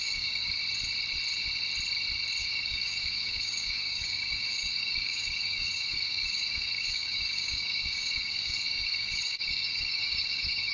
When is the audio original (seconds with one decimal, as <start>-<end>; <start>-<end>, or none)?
0.6-2.4